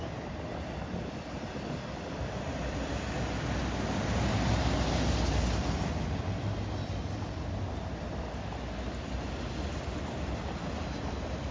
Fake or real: real